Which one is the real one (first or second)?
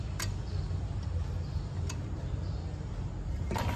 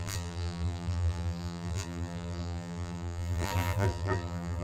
first